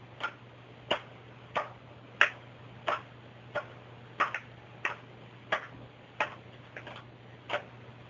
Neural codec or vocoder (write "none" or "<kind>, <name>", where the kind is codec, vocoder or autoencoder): none